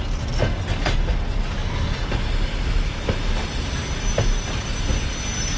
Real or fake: real